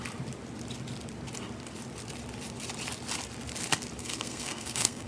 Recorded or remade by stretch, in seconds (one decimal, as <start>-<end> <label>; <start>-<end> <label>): 0.0-4.0 recorded; 4.0-5.1 remade